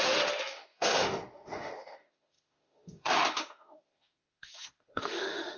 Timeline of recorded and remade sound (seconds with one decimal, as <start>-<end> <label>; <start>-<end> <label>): 0.0-5.6 remade